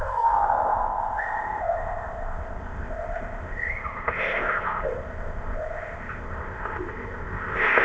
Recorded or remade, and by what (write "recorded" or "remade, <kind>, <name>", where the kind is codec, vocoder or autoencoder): remade, codec, ZipCodec